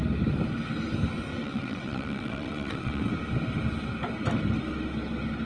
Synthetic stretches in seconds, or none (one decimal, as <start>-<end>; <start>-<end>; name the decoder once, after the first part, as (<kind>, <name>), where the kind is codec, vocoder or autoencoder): 1.3-3.1 (vocoder, WaveNeXt)